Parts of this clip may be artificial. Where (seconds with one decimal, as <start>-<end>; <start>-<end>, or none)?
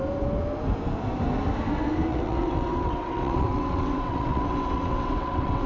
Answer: 2.1-5.7